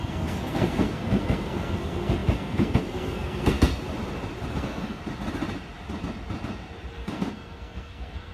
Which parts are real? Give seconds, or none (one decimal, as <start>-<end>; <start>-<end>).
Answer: 3.7-4.5; 5.0-6.9